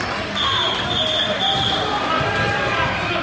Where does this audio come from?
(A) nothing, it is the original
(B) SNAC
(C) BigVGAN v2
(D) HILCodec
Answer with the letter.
A